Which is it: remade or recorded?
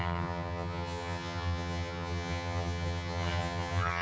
remade